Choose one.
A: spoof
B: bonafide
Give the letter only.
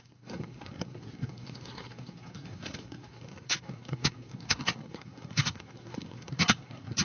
A